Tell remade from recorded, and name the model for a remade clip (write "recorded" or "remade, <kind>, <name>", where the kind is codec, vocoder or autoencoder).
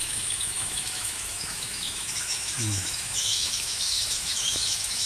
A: remade, autoencoder, DAC-VAE